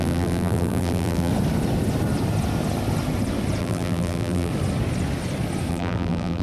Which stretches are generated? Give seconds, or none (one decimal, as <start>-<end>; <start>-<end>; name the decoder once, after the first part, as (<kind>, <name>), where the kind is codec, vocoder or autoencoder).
0.0-1.3 (vocoder, BigVGAN v2); 3.6-4.5; 5.7-6.4